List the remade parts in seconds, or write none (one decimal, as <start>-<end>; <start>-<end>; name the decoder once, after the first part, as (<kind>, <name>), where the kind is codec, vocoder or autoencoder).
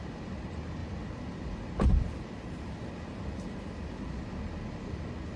none